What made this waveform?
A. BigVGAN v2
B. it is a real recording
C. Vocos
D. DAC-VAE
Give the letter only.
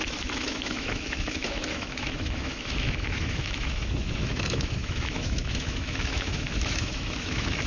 D